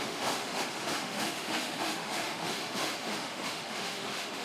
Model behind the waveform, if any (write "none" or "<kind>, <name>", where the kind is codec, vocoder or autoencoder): autoencoder, DAC-VAE